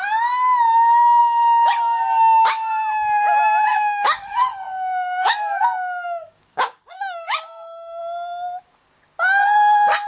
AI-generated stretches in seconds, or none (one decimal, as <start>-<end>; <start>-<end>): 1.2-2.9; 3.7-8.0